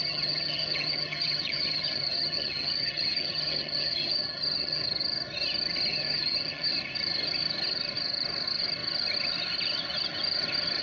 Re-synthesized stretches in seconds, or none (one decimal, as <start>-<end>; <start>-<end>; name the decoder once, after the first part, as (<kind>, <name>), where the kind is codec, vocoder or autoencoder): 0.0-4.8 (vocoder, HiFi-GAN); 5.9-6.7